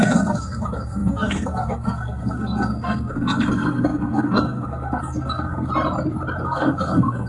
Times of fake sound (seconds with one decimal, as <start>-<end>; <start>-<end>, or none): 0.0-5.7; 6.4-7.3